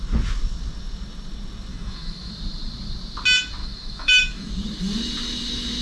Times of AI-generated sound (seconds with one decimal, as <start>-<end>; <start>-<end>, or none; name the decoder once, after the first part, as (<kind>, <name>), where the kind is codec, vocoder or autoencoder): 1.7-2.3 (autoencoder, DAC-VAE); 3.6-4.5